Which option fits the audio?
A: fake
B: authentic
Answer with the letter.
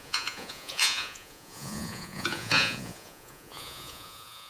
A